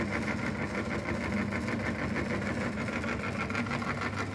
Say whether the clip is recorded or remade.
recorded